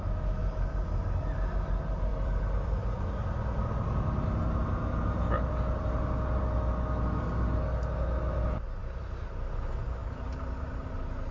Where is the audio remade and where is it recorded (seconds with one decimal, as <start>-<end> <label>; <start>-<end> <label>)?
0.0-0.4 recorded; 0.4-1.0 remade; 1.0-2.1 recorded; 2.1-6.4 remade; 6.4-8.8 recorded; 8.8-9.5 remade; 9.5-10.0 recorded; 10.0-10.9 remade; 10.9-11.3 recorded